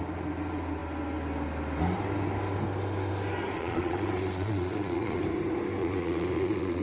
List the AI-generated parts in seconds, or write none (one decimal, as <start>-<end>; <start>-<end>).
3.6-5.2; 5.8-6.8